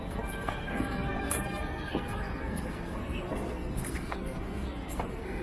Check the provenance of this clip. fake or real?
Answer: fake